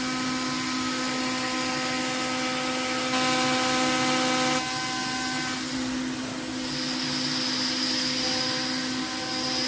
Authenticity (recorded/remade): recorded